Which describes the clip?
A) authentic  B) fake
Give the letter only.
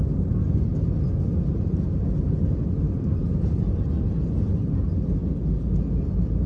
A